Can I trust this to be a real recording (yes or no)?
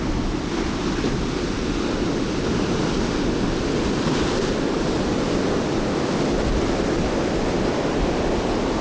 yes